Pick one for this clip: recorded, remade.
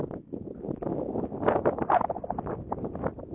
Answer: recorded